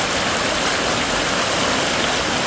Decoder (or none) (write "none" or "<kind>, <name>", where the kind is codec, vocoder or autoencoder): none